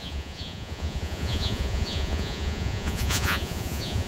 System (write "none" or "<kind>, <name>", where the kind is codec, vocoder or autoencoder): vocoder, Vocos